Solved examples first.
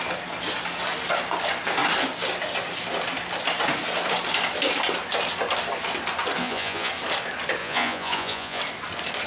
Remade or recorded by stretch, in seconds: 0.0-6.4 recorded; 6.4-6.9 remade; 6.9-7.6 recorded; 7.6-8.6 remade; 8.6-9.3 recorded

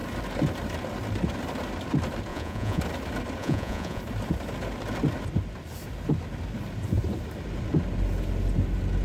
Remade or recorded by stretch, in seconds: 0.0-2.3 recorded; 2.3-2.8 remade; 2.8-3.4 recorded; 3.4-4.0 remade; 4.0-9.0 recorded

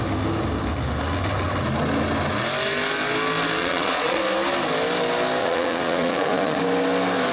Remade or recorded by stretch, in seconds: 0.0-3.6 recorded; 3.6-4.2 remade; 4.2-5.4 recorded; 5.4-6.6 remade; 6.6-7.3 recorded

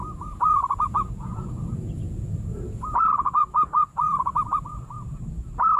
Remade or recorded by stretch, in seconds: 0.0-5.8 remade

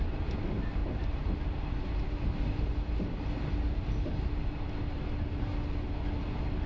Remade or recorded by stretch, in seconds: 0.0-0.8 recorded; 0.8-1.4 remade; 1.4-6.7 recorded